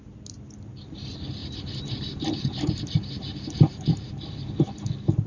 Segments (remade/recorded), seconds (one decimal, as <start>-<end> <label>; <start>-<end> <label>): 0.0-1.4 recorded; 1.4-4.6 remade; 4.6-5.3 recorded

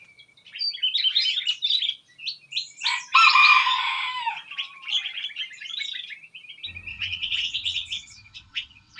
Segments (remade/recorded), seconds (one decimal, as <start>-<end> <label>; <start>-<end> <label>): 0.0-6.9 recorded; 6.9-9.0 remade

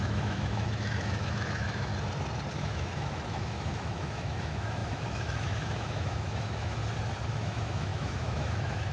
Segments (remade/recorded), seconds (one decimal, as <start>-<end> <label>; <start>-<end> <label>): 0.0-1.9 remade; 1.9-2.5 recorded; 2.5-6.8 remade; 6.8-7.3 recorded; 7.3-8.9 remade

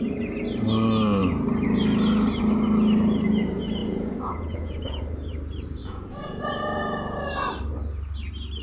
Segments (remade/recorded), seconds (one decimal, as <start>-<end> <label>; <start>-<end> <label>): 0.0-3.8 recorded; 3.8-5.0 remade; 5.0-5.8 recorded; 5.8-6.4 remade; 6.4-8.6 recorded

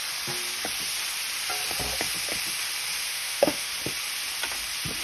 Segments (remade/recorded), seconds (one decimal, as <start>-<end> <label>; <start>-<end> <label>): 0.0-3.1 recorded; 3.1-3.7 remade; 3.7-5.0 recorded

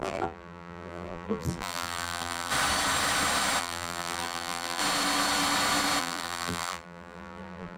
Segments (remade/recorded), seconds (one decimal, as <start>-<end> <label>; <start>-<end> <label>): 0.0-2.5 remade; 2.5-3.6 recorded; 3.6-4.8 remade; 4.8-6.0 recorded; 6.0-7.8 remade

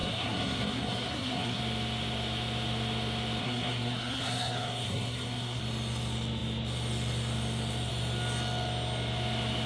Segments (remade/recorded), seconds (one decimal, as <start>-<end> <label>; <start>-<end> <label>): 0.0-1.6 remade; 1.6-3.4 recorded; 3.4-5.6 remade; 5.6-9.7 recorded